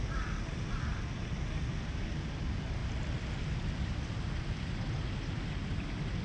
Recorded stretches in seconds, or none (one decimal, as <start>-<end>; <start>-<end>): 0.0-6.2